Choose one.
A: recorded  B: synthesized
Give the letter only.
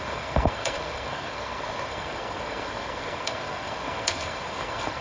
B